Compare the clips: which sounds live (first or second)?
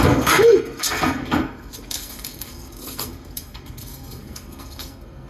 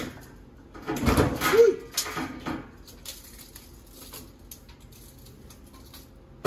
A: second